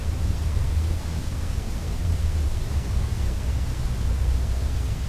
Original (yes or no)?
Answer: no